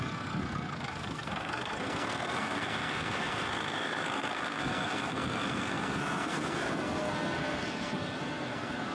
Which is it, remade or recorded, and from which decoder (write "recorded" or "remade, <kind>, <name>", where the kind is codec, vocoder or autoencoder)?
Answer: remade, codec, SNAC